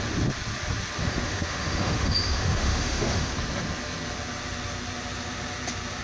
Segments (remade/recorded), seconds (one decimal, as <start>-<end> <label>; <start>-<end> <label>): 0.0-1.0 recorded; 1.0-3.3 remade; 3.3-6.0 recorded